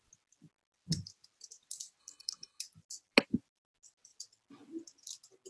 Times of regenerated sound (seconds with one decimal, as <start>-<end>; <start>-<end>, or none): 2.0-2.6